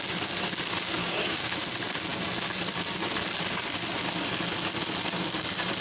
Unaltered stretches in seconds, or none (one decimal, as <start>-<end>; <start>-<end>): 0.0-1.0; 1.5-5.8

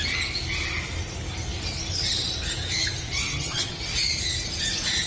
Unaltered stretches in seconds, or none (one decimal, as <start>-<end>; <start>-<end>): 0.0-3.3; 3.8-5.1

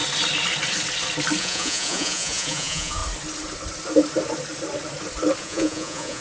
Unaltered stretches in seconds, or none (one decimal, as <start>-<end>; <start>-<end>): 0.0-1.4; 3.0-5.4

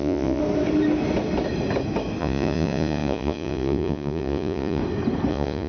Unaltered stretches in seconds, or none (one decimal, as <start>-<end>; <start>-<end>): 0.4-2.2; 4.8-5.3

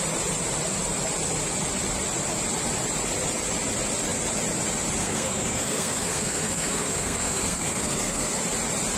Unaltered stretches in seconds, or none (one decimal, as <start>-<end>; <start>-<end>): 0.0-5.0; 8.4-9.0

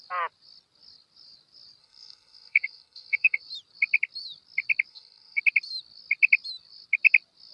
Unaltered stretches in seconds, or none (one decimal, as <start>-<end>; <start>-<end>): 0.0-1.8; 3.4-4.9; 5.4-7.5

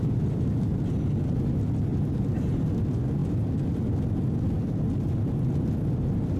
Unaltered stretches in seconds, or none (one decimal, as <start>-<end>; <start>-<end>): 0.8-1.9; 2.4-6.4

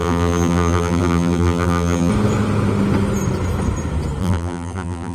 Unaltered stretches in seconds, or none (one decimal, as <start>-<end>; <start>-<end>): 2.1-4.2